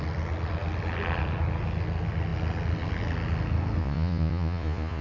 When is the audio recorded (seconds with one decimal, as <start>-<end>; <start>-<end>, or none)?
0.0-3.8